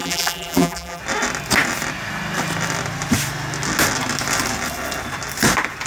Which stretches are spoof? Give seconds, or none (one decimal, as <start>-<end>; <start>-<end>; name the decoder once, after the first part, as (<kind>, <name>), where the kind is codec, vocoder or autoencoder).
0.0-1.0 (vocoder, BigVGAN v2)

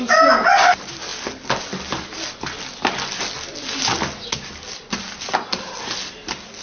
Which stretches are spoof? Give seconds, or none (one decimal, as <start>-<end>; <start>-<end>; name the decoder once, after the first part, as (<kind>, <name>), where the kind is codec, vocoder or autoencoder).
none

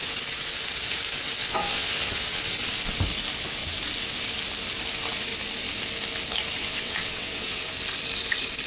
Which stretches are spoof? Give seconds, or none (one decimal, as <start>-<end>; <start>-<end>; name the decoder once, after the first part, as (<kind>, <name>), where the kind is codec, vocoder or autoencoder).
1.4-2.5 (vocoder, WaveNeXt); 6.6-7.7

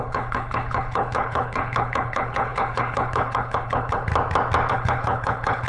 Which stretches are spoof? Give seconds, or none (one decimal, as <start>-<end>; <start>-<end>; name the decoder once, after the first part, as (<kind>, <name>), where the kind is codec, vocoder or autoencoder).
0.0-4.1 (codec, HILCodec); 4.7-5.7